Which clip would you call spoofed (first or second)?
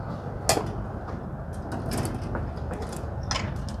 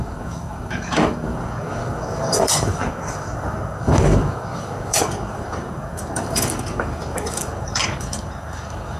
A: second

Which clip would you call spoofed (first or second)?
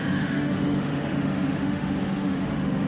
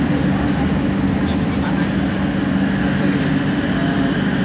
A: first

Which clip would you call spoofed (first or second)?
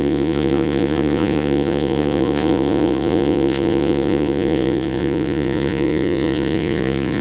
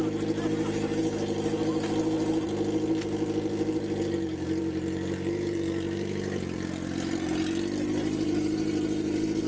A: first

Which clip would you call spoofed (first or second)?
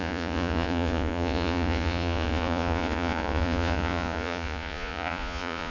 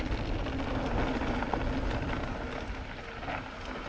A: first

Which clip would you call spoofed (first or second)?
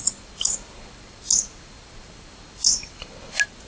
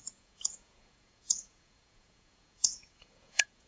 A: second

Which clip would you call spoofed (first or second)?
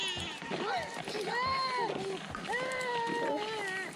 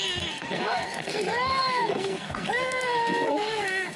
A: second